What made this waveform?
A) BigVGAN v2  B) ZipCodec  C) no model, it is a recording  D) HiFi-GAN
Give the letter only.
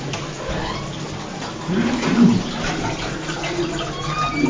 C